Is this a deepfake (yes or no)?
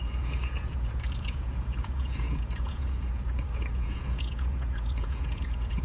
yes